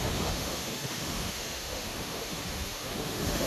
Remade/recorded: remade